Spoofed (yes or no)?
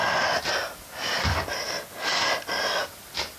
no